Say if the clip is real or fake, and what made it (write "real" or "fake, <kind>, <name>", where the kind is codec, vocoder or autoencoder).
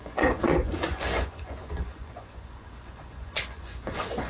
fake, vocoder, Vocos